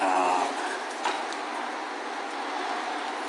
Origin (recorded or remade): recorded